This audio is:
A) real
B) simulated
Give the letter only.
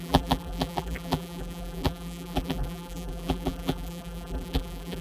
B